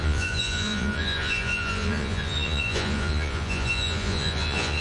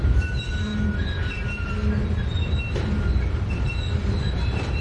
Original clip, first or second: second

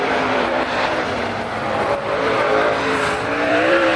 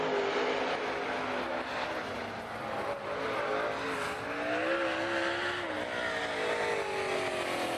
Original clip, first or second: second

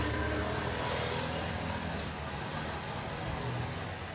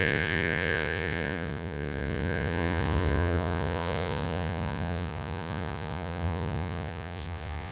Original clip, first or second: first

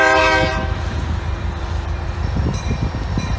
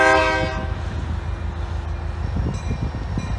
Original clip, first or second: second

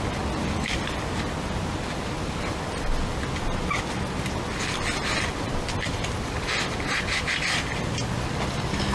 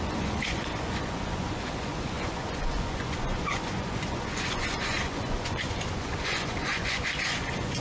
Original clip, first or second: first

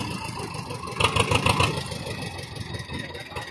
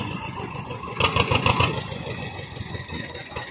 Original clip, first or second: first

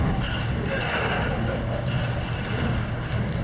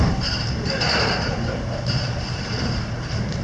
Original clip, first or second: first